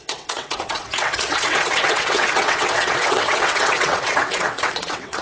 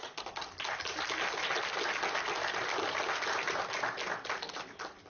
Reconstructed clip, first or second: first